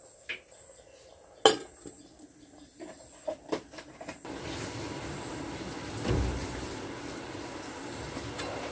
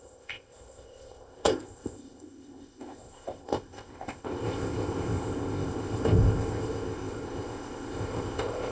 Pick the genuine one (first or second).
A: first